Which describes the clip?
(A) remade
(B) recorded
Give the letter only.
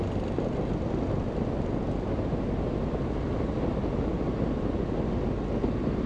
B